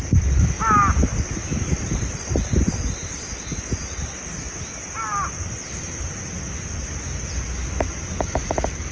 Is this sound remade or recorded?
recorded